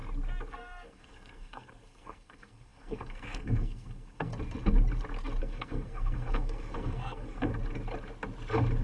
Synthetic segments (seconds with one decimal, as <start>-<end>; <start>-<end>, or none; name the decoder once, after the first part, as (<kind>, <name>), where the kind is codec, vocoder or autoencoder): 0.5-4.3 (codec, SNAC); 5.4-7.5